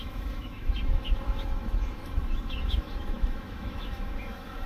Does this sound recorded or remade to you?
remade